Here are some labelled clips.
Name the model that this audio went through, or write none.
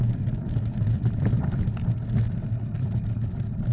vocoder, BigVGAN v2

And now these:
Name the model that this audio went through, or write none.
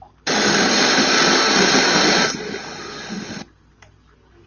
none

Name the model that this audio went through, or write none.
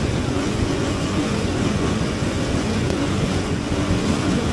vocoder, Vocos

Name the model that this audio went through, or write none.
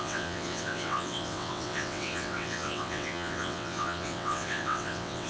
vocoder, WaveNeXt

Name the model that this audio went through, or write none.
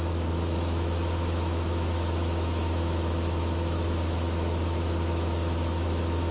autoencoder, DAC-VAE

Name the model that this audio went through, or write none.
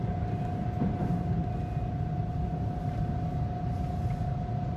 none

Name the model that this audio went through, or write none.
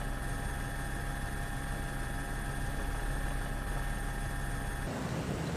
none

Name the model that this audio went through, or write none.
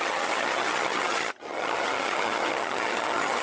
vocoder, HiFi-GAN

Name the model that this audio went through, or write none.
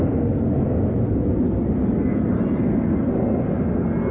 none